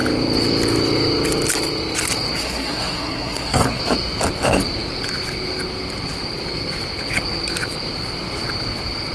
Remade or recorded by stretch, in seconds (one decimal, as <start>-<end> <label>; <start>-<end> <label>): 0.0-2.4 recorded; 2.4-3.8 remade; 3.8-9.1 recorded